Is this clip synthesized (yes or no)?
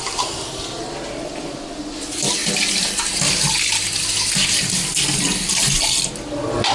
no